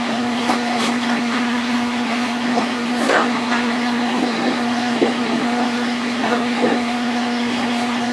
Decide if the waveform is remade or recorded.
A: remade